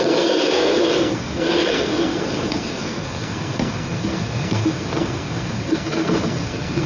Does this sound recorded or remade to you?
remade